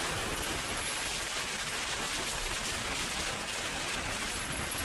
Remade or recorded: recorded